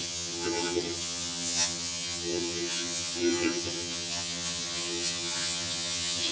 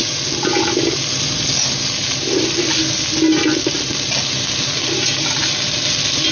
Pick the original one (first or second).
second